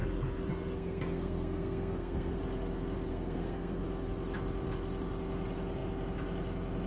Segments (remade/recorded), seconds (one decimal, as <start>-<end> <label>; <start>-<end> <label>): 0.0-2.4 remade; 2.4-3.1 recorded; 3.1-3.8 remade; 3.8-6.9 recorded

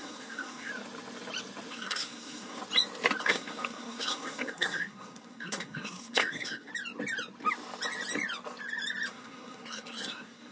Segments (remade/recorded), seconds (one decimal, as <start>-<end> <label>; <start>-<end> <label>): 0.0-0.7 remade; 0.7-1.7 recorded; 1.7-2.6 remade; 2.6-3.2 recorded; 3.2-6.7 remade; 6.7-9.1 recorded; 9.1-10.5 remade